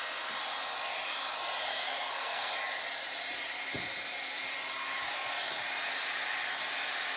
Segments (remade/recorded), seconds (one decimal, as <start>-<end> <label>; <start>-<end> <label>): 0.0-1.7 recorded; 1.7-2.5 remade; 2.5-7.2 recorded